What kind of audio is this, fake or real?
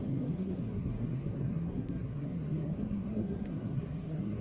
fake